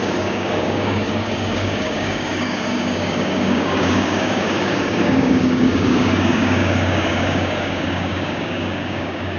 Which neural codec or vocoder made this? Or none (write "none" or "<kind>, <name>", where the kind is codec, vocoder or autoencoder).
codec, DAC